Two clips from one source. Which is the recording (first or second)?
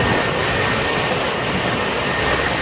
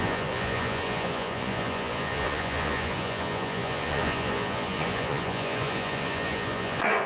first